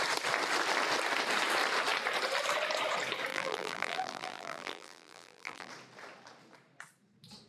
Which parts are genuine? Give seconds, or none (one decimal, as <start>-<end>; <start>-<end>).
0.0-3.3; 5.7-7.5